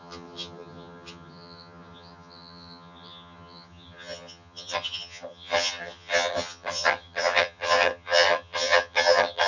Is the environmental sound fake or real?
fake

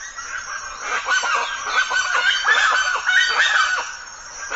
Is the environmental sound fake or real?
real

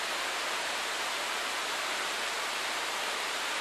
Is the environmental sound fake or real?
real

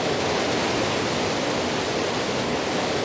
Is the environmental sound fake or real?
real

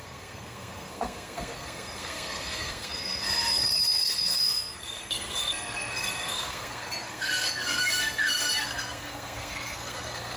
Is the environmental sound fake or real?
fake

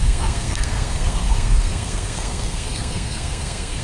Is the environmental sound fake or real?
fake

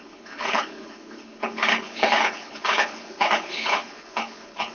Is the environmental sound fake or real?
fake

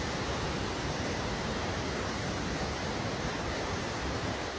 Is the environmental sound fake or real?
real